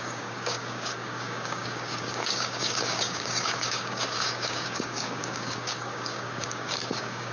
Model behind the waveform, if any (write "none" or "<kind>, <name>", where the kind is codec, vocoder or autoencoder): codec, DAC